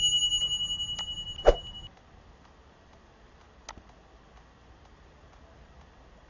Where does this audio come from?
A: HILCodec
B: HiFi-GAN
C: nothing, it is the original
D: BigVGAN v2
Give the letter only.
C